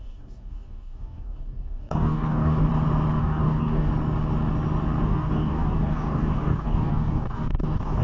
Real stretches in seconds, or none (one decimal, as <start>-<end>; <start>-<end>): 2.7-3.2; 3.9-5.0